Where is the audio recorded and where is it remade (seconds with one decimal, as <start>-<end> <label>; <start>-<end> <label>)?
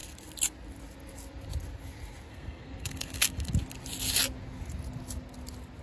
0.0-2.3 recorded; 2.3-3.5 remade; 3.5-5.8 recorded